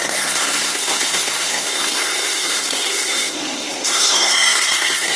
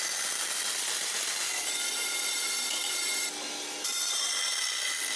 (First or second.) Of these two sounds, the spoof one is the first